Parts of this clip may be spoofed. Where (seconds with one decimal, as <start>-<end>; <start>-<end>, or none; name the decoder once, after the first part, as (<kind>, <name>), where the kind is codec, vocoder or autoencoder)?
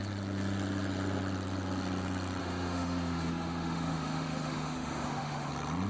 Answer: 2.4-5.5 (autoencoder, DAC-VAE)